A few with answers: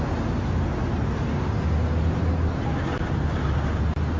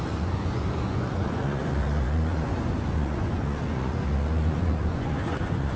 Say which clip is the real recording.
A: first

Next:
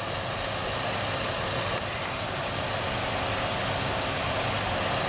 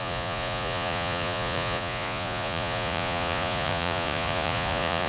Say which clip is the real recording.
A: first